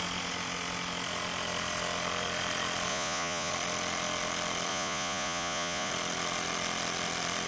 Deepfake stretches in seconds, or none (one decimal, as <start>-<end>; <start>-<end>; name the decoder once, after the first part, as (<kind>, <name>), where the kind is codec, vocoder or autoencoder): 2.9-3.5 (vocoder, Vocos); 4.7-5.9

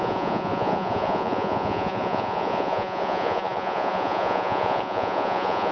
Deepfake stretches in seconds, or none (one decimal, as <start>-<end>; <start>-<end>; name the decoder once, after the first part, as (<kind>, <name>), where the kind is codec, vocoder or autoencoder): 0.0-5.7 (vocoder, Vocos)

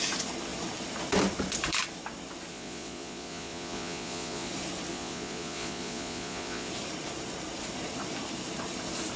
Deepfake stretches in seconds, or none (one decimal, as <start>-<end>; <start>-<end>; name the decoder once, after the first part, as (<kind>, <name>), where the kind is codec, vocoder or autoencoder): 2.5-4.5 (vocoder, Vocos); 4.9-6.7

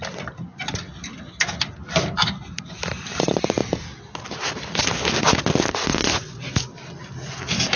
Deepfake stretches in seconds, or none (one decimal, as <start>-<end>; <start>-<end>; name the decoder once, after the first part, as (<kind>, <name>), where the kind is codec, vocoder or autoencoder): 5.9-6.4 (vocoder, Vocos)

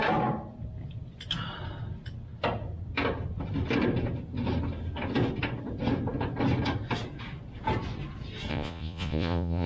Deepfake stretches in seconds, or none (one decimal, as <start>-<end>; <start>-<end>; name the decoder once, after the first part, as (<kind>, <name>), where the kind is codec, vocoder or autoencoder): 8.5-9.7 (vocoder, Vocos)

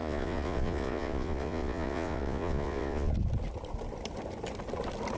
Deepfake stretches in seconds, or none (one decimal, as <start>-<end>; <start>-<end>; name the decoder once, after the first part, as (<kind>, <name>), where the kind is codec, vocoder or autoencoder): 0.0-3.1 (vocoder, Vocos)

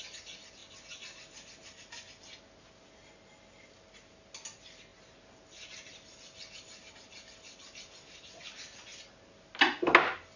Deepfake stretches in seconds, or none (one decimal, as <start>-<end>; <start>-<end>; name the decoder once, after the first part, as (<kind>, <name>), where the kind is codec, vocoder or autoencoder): none

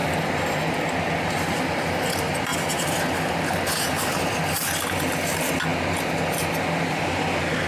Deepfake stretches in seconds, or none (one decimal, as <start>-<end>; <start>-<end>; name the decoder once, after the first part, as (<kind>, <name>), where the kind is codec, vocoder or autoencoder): none